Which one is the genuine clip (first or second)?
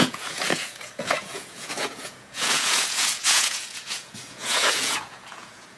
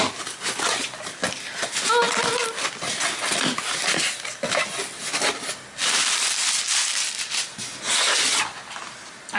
second